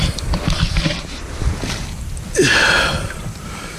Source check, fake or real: fake